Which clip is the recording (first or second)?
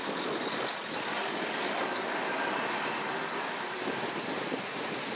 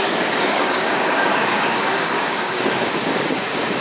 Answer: first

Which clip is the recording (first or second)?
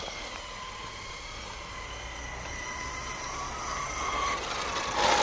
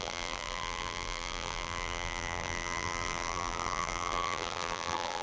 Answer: first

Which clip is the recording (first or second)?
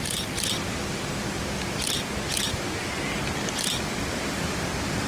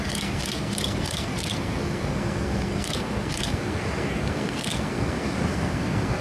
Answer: first